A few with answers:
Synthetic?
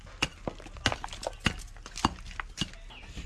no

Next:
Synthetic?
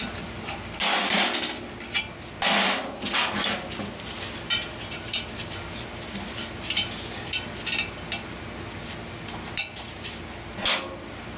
no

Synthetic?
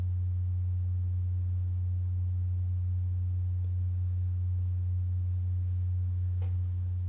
no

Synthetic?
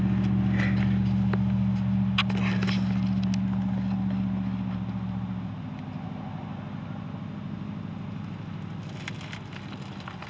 no